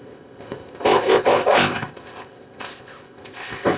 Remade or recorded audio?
remade